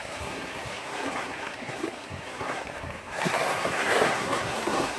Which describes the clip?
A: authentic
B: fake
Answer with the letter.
B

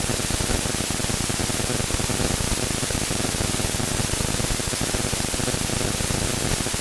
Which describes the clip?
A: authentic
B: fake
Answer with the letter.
A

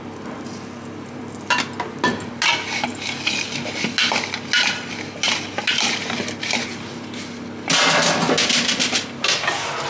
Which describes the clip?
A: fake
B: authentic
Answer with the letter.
B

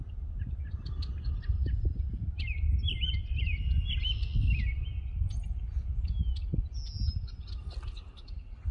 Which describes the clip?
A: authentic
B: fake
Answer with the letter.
A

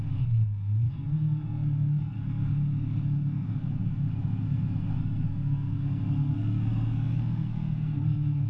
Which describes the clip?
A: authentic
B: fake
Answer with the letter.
B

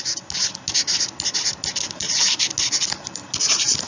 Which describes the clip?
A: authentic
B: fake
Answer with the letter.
A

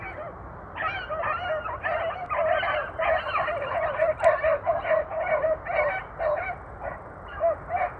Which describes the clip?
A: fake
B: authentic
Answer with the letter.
B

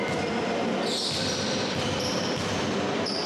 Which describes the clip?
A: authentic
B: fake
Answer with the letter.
A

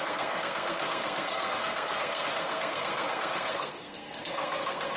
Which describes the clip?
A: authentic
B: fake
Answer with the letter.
B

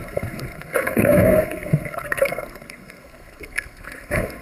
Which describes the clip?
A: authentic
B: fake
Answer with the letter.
B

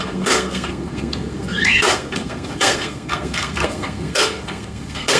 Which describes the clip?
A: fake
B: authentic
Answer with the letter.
A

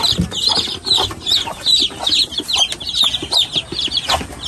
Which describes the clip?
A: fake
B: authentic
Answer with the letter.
B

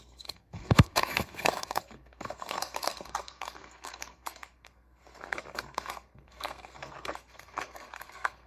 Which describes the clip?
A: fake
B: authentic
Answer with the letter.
A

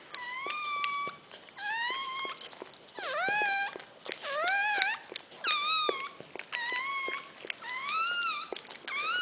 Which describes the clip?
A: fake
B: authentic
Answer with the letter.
B